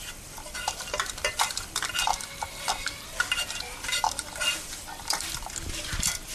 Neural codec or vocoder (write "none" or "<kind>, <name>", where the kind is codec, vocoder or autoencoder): vocoder, BigVGAN v2